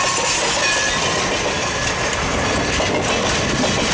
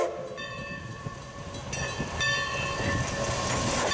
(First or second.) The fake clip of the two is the first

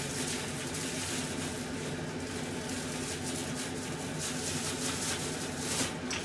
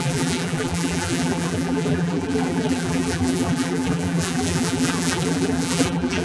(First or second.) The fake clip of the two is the second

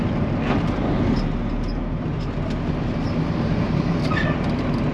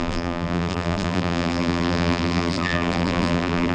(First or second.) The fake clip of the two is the second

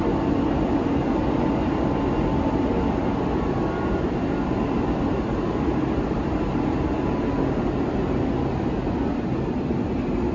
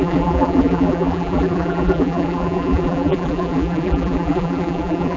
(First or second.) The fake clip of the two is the second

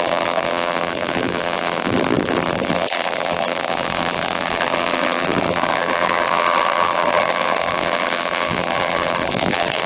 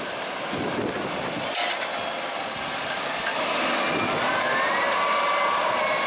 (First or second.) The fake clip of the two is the first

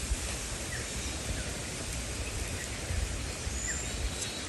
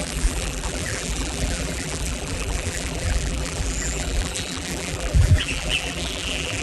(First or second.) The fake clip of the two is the second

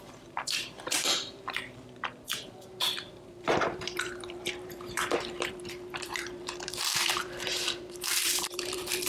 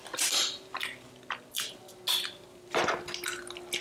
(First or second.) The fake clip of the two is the first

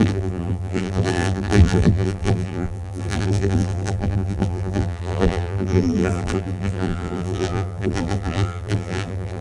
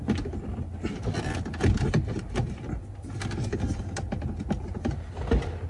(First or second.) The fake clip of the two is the first